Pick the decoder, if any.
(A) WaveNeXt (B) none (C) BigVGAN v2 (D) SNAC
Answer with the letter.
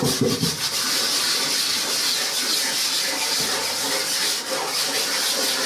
B